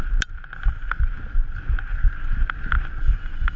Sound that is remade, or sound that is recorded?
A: recorded